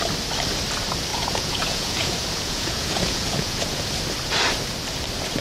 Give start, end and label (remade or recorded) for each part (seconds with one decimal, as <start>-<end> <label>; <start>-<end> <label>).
0.0-1.1 recorded; 1.1-3.8 remade; 3.8-5.4 recorded